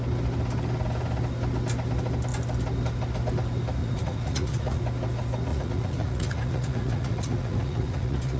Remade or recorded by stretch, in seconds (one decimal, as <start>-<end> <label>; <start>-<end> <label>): 0.0-3.8 recorded; 3.8-4.8 remade; 4.8-5.5 recorded; 5.5-8.4 remade

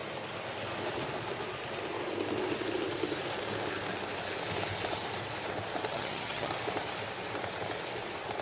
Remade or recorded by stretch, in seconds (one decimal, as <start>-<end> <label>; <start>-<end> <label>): 0.0-5.9 recorded; 5.9-6.5 remade; 6.5-8.4 recorded

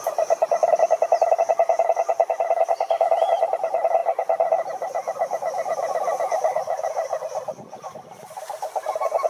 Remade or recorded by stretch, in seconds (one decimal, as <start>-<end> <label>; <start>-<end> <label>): 0.0-9.3 recorded

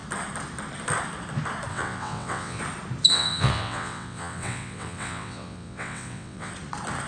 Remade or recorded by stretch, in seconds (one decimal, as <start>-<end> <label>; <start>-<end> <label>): 0.0-1.7 recorded; 1.7-2.6 remade; 2.6-3.1 recorded; 3.1-6.5 remade; 6.5-7.1 recorded

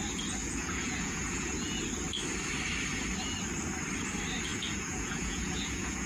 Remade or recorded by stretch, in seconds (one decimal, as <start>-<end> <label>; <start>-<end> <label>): 0.0-0.4 recorded; 0.4-1.8 remade; 1.8-4.5 recorded; 4.5-6.1 remade

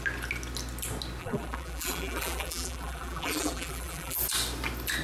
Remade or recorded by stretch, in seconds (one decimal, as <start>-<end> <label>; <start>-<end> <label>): 0.0-1.2 recorded; 1.2-4.2 remade; 4.2-5.0 recorded

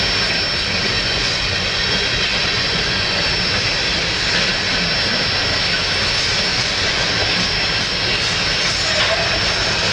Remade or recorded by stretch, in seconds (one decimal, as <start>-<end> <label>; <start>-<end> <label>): 0.0-0.8 recorded; 0.8-3.2 remade; 3.2-6.5 recorded; 6.5-7.1 remade; 7.1-9.9 recorded

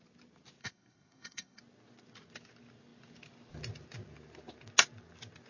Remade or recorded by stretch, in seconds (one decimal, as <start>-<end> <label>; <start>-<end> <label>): 0.0-0.6 recorded; 0.6-1.6 remade; 1.6-5.5 recorded